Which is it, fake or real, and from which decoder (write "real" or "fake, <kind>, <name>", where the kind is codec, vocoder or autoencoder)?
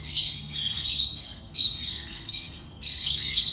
fake, codec, SNAC